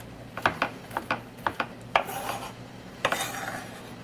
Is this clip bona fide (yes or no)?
yes